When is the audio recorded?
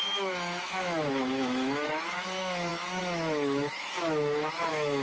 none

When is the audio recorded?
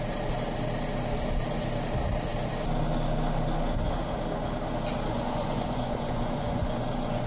0.0-5.1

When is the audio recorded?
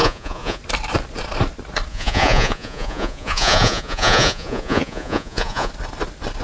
0.6-1.9; 5.7-6.4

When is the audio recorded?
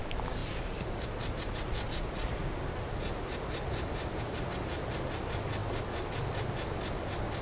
0.0-7.4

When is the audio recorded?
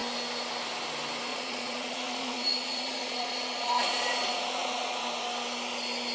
0.0-1.3; 5.0-6.1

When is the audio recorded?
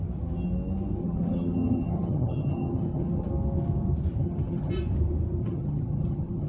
0.0-1.0; 3.3-4.2; 4.7-5.4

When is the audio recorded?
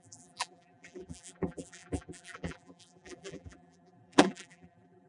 none